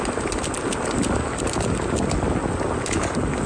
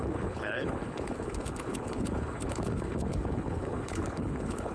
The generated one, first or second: second